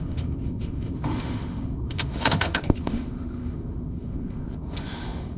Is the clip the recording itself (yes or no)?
no